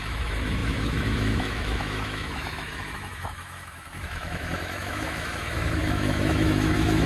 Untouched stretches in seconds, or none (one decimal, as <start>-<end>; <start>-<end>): none